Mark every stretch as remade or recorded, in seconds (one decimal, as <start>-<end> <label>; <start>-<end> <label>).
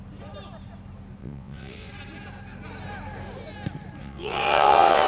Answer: 0.0-1.2 recorded; 1.2-1.9 remade; 1.9-4.0 recorded; 4.0-5.1 remade